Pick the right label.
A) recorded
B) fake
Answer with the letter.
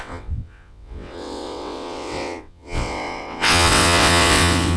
B